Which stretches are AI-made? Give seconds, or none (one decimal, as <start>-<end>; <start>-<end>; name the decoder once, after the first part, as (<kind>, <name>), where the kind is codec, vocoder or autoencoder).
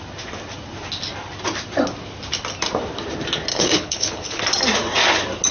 3.5-4.4 (codec, HILCodec)